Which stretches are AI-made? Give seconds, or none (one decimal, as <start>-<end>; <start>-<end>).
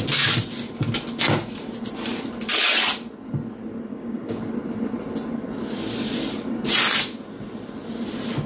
3.9-4.4